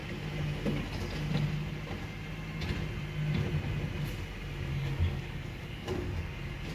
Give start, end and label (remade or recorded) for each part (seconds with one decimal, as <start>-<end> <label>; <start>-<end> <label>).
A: 0.0-4.7 recorded; 4.7-6.7 remade